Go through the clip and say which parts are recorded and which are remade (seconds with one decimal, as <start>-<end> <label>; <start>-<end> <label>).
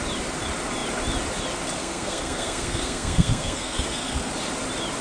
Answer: 0.0-1.8 recorded; 1.8-4.3 remade; 4.3-5.0 recorded